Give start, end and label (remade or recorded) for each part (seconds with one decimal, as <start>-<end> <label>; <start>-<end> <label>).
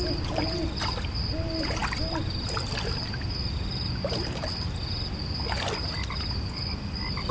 0.0-7.3 recorded